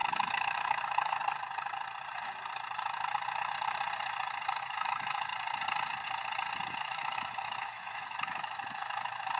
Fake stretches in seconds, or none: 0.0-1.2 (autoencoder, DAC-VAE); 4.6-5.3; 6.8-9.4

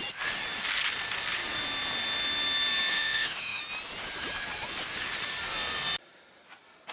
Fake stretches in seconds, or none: 2.9-3.6 (autoencoder, DAC-VAE)

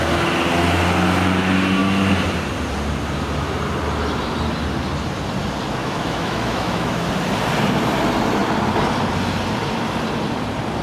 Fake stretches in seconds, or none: 5.8-7.1 (autoencoder, DAC-VAE)

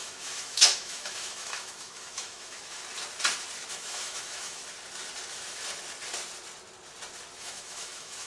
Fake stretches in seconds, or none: 0.0-2.8 (autoencoder, DAC-VAE); 3.7-4.6; 7.4-8.3

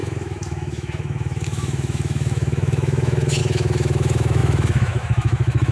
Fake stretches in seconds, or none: 0.0-5.7 (autoencoder, DAC-VAE)

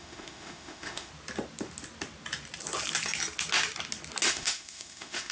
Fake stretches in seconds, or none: 0.0-1.1 (autoencoder, DAC-VAE); 4.3-5.3